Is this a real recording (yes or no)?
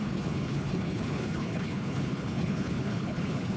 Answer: no